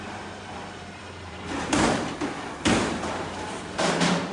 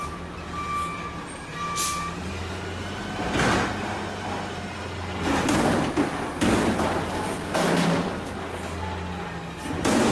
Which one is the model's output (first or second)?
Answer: first